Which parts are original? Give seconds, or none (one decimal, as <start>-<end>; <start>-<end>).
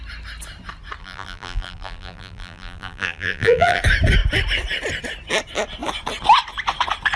0.0-1.0; 3.8-7.2